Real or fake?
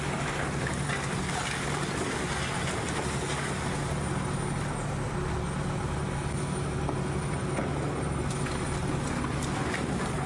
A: real